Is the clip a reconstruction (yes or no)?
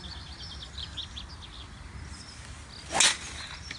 no